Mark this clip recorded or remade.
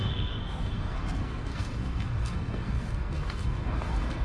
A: remade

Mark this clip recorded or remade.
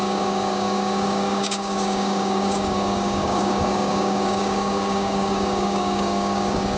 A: remade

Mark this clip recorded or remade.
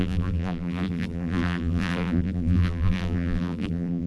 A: remade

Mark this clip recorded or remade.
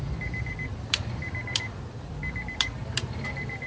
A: remade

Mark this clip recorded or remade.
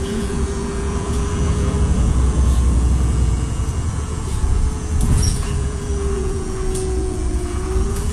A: remade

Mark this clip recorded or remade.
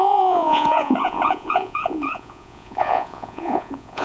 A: remade